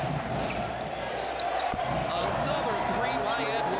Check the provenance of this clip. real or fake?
real